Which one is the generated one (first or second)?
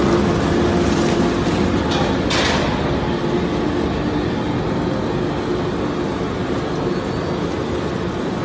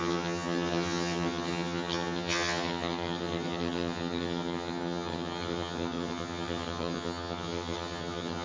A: second